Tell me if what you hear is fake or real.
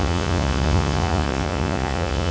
fake